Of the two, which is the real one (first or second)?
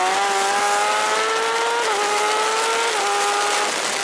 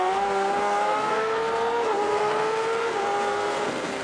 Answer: first